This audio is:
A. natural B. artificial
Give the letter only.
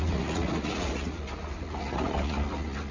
B